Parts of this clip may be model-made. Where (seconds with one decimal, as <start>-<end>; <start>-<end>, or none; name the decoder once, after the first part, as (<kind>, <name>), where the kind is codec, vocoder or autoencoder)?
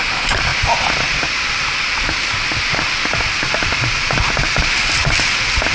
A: 0.0-0.5 (vocoder, BigVGAN v2); 3.9-5.0